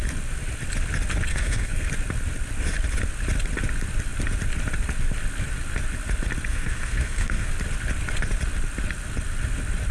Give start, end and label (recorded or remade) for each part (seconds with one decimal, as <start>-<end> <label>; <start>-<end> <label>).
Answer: 0.0-1.3 recorded; 1.3-1.9 remade; 1.9-6.5 recorded; 6.5-7.5 remade; 7.5-9.9 recorded